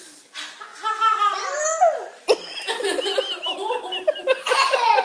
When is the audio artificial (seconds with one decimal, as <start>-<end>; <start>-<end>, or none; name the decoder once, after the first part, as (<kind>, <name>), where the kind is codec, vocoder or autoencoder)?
none